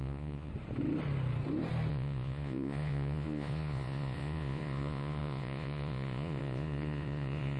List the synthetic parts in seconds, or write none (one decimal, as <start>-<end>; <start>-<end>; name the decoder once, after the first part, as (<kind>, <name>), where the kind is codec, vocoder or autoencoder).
0.0-0.5 (vocoder, Vocos); 1.9-7.6